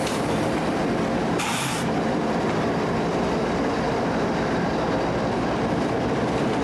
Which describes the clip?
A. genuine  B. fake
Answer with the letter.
B